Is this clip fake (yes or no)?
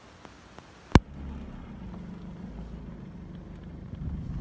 no